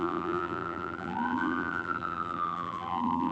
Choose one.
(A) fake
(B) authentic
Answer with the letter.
A